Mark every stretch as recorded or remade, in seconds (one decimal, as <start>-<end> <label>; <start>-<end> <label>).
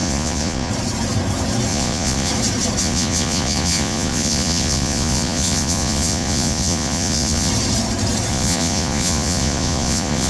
0.0-0.7 remade; 0.7-1.7 recorded; 1.7-2.3 remade; 2.3-2.8 recorded; 2.8-7.5 remade; 7.5-8.3 recorded; 8.3-10.3 remade